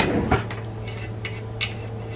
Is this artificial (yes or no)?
no